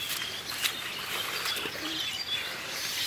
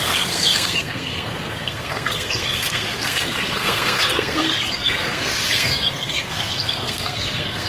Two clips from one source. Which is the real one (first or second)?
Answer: first